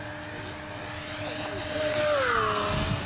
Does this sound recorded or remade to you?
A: recorded